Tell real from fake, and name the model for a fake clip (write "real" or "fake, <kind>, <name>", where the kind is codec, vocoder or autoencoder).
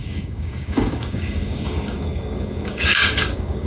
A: fake, codec, DAC